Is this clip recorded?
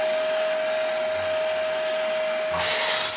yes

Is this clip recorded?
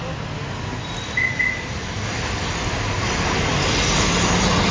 yes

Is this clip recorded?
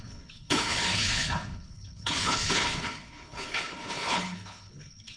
no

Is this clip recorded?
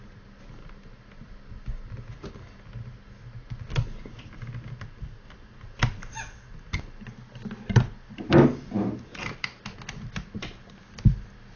yes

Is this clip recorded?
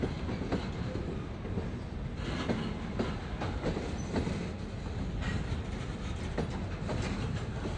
yes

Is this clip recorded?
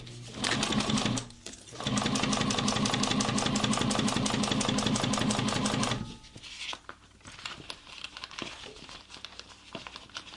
yes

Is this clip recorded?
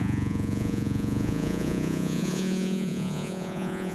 no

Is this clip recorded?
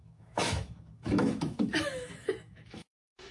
no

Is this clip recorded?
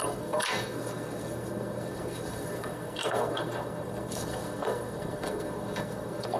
no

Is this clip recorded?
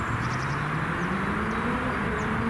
yes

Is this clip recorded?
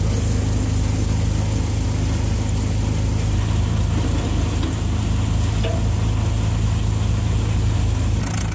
yes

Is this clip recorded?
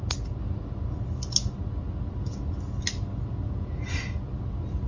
yes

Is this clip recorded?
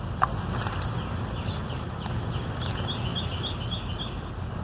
yes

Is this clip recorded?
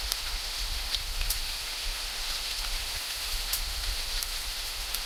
no